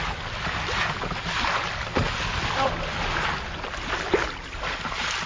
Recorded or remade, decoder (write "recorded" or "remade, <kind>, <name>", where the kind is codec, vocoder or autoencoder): recorded